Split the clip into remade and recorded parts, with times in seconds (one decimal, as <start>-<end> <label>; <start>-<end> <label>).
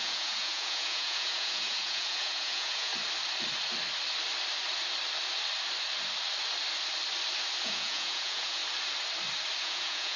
0.0-2.9 remade; 2.9-7.6 recorded; 7.6-8.6 remade; 8.6-9.6 recorded; 9.6-10.2 remade